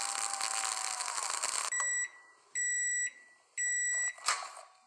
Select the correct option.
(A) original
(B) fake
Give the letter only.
A